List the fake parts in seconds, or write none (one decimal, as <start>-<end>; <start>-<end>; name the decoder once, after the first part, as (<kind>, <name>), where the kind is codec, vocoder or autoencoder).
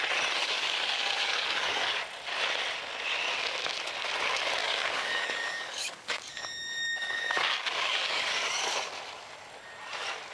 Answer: 0.4-2.0 (codec, DAC); 4.6-8.7